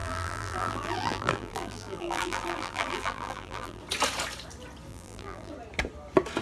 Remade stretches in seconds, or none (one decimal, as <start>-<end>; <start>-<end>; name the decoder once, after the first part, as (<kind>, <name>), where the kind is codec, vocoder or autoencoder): 0.0-3.8 (vocoder, BigVGAN v2); 4.9-5.5